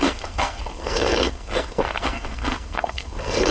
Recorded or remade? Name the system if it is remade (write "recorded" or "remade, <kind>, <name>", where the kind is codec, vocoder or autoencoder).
remade, codec, SNAC